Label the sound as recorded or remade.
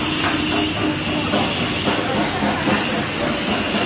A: recorded